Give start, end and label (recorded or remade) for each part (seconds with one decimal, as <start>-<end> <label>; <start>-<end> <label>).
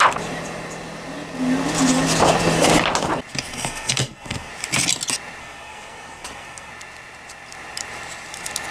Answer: 0.0-3.5 recorded; 3.5-4.5 remade; 4.5-5.4 recorded; 5.4-6.7 remade; 6.7-8.7 recorded